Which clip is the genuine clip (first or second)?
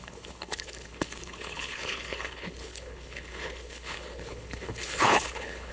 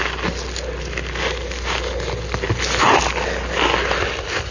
second